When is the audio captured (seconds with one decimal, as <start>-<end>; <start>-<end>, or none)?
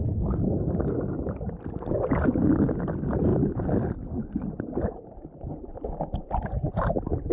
0.0-7.3